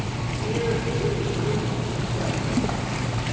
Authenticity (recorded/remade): recorded